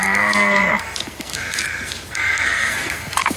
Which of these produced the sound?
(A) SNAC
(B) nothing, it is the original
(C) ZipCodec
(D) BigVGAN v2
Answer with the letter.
A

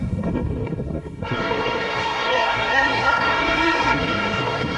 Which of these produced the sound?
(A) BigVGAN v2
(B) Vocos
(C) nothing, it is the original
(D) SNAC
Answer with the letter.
D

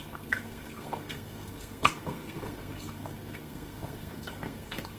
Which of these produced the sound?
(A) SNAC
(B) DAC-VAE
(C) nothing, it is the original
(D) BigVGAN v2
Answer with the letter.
A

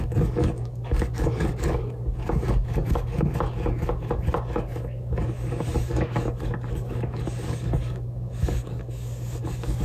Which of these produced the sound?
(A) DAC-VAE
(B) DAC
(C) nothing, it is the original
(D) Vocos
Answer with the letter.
B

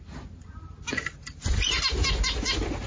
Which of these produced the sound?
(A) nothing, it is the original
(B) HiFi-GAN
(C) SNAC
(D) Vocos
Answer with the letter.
A